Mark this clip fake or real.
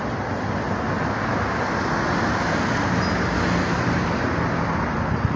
real